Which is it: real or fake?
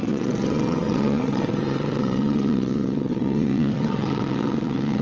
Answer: fake